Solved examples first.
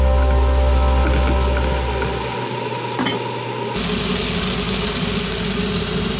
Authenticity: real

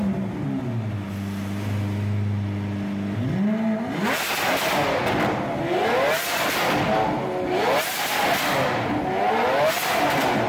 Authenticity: real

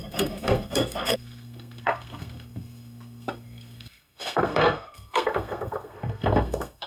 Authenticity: fake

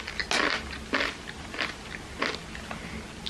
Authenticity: real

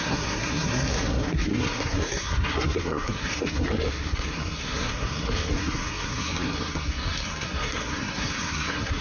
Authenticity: fake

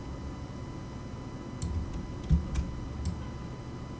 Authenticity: real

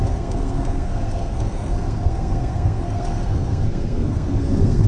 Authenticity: fake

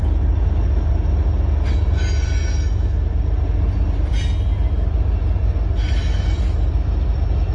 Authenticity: real